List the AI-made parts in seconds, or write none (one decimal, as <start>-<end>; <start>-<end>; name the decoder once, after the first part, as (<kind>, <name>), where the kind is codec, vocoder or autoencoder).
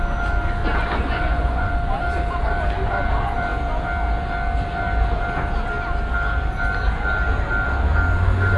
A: 0.6-1.7 (vocoder, Vocos)